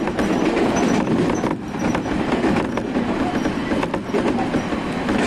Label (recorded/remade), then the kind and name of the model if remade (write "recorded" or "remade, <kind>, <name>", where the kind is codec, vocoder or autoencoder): recorded